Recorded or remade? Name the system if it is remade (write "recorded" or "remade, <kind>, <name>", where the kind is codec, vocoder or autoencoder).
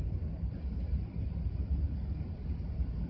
recorded